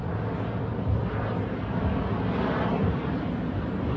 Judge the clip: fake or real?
real